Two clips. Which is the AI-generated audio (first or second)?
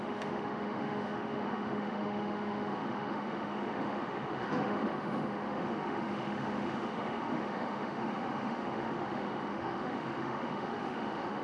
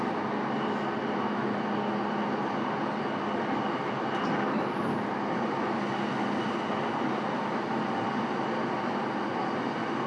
first